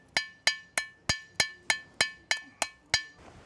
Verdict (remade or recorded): recorded